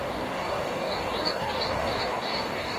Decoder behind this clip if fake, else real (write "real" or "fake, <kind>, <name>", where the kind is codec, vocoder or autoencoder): fake, codec, DAC